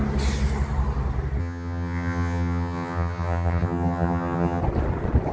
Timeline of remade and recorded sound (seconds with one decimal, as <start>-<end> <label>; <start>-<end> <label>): 0.0-1.4 recorded; 1.4-4.6 remade; 4.6-5.3 recorded